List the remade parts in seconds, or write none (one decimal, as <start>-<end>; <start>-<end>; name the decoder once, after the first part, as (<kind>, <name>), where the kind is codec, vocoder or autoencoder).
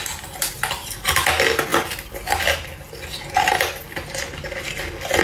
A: none